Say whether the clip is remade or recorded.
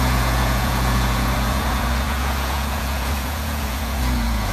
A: remade